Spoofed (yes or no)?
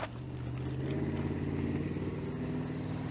no